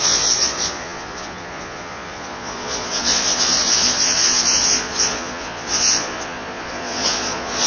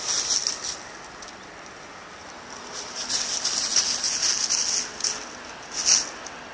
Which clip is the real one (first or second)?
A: second